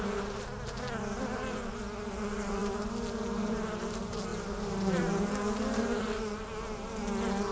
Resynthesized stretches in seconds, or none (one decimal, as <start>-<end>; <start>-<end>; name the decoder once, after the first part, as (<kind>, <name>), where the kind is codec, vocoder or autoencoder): none